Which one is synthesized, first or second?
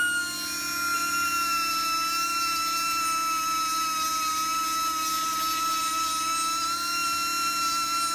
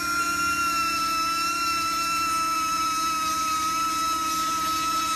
second